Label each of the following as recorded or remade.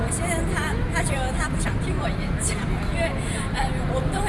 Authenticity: recorded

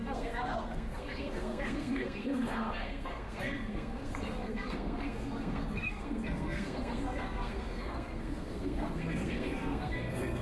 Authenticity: remade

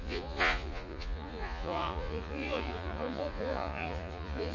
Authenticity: remade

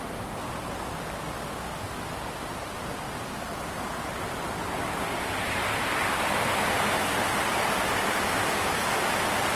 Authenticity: recorded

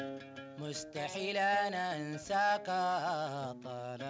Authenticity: recorded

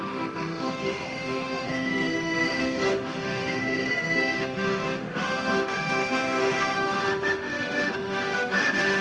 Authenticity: remade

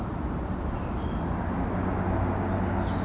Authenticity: recorded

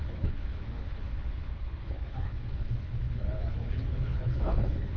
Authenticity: remade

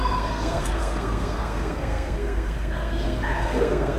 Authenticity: remade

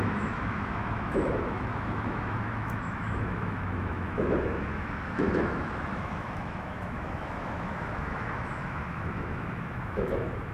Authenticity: remade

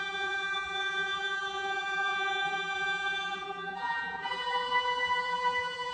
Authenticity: remade